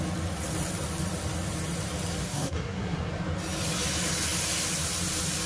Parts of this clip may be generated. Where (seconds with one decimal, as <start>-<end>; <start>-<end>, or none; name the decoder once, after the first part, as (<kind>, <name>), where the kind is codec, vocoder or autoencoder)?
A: 2.2-3.1 (codec, SNAC)